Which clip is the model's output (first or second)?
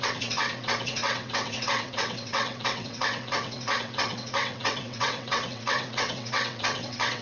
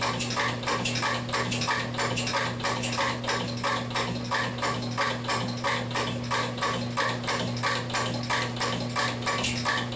first